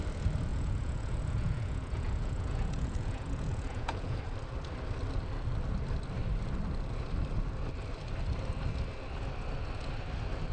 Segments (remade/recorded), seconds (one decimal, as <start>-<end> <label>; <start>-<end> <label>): 0.0-0.5 recorded; 0.5-4.2 remade; 4.2-10.5 recorded